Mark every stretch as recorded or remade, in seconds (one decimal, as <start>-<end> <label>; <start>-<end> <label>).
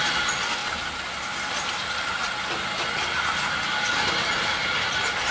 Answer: 0.0-5.3 recorded